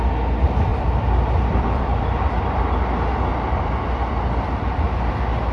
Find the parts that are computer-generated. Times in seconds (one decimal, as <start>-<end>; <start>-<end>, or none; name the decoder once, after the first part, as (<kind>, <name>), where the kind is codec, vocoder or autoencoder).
0.7-2.6 (vocoder, BigVGAN v2); 3.3-5.1